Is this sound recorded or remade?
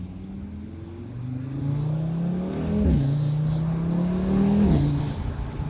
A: recorded